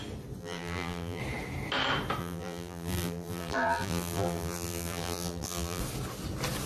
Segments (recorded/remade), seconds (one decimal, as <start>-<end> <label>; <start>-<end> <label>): 0.0-0.4 recorded; 0.4-1.2 remade; 1.2-2.2 recorded; 2.2-5.8 remade; 5.8-6.7 recorded